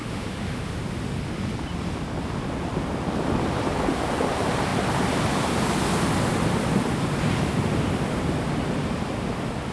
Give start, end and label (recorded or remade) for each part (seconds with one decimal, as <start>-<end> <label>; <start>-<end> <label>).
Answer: 0.0-0.8 remade; 0.8-9.7 recorded